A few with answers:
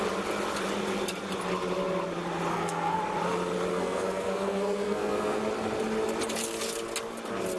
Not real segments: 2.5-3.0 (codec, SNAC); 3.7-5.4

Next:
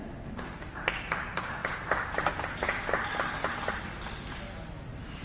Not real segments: none

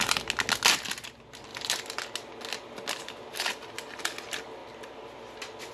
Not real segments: none

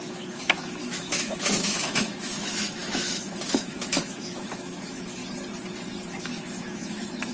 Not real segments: 0.0-5.2 (autoencoder, DAC-VAE); 6.2-7.3

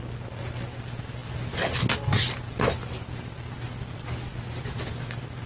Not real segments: none